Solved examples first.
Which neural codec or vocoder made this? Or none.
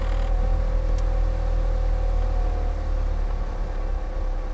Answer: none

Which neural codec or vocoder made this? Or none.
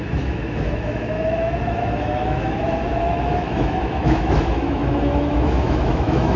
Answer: autoencoder, DAC-VAE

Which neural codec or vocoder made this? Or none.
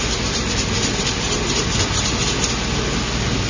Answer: none